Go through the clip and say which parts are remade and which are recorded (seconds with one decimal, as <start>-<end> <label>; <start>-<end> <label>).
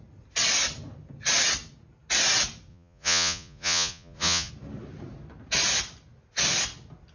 0.0-2.7 recorded; 2.7-4.5 remade; 4.5-7.1 recorded